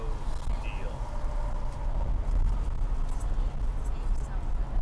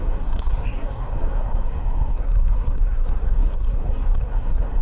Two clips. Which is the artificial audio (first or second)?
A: second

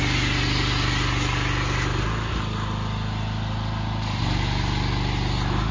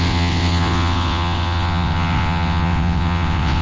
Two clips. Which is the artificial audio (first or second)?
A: second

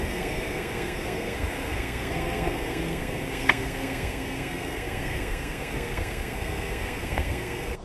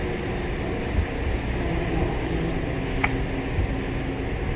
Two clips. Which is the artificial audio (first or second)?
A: first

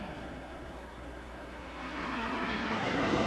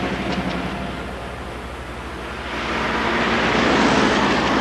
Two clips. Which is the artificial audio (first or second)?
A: first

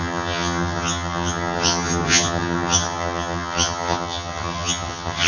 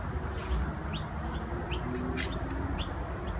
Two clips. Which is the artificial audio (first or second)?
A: first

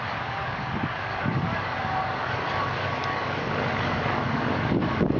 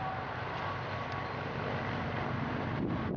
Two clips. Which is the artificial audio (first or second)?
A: first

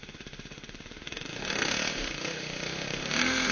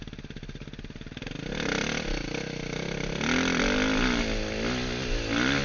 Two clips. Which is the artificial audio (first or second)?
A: first